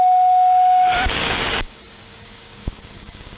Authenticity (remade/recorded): remade